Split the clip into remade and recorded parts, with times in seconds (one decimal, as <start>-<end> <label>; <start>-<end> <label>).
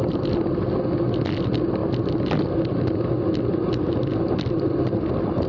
0.0-5.5 recorded